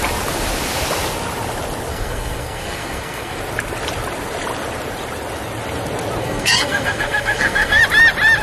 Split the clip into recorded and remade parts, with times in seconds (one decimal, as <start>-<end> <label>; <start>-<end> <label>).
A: 0.0-1.9 recorded; 1.9-3.4 remade; 3.4-6.2 recorded; 6.2-7.8 remade; 7.8-8.4 recorded